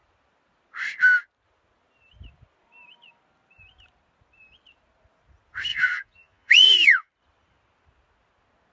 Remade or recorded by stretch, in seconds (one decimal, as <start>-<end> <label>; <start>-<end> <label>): 0.0-5.7 recorded; 5.7-7.1 remade; 7.1-8.7 recorded